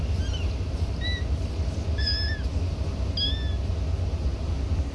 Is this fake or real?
real